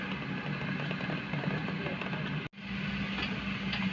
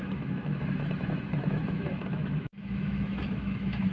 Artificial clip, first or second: second